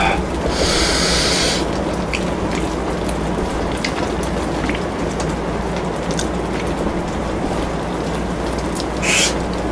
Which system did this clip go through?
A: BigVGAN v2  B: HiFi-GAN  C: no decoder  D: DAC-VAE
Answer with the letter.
C